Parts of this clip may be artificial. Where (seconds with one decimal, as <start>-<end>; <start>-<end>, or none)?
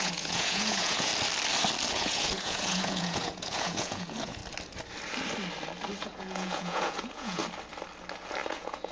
0.0-1.1; 1.9-4.4; 6.0-7.4; 8.5-8.9